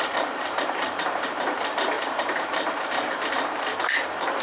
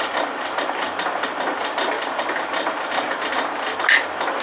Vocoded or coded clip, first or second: first